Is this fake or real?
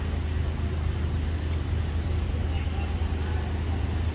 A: real